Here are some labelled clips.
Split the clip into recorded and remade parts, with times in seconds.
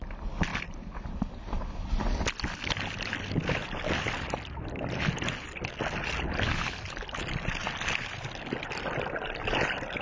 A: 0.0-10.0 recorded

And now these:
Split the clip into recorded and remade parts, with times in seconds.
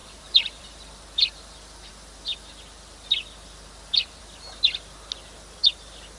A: 0.0-1.9 remade; 1.9-2.3 recorded; 2.3-4.2 remade; 4.2-6.2 recorded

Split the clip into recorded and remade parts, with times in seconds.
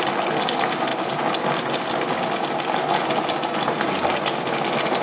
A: 0.0-5.0 recorded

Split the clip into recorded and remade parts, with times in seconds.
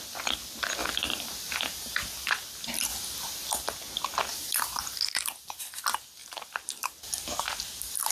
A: 0.0-0.8 recorded; 0.8-2.3 remade; 2.3-4.3 recorded; 4.3-5.6 remade; 5.6-6.2 recorded; 6.2-7.0 remade; 7.0-8.1 recorded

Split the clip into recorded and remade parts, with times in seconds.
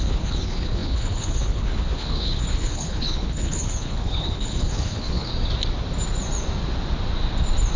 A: 0.0-5.3 remade; 5.3-7.8 recorded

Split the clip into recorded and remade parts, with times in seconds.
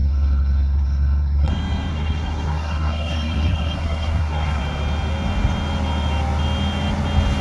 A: 0.0-1.5 remade; 1.5-1.9 recorded; 1.9-4.6 remade; 4.6-7.4 recorded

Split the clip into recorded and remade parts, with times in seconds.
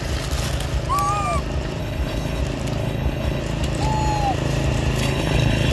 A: 0.0-1.8 recorded; 1.8-2.4 remade; 2.4-2.8 recorded; 2.8-3.4 remade; 3.4-5.0 recorded; 5.0-5.7 remade